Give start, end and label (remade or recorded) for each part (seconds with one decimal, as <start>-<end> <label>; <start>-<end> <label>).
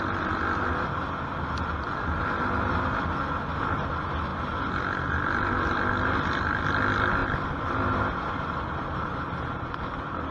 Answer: 0.0-10.3 recorded